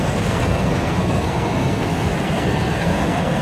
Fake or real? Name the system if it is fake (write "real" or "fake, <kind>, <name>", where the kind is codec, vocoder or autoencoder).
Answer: fake, codec, SNAC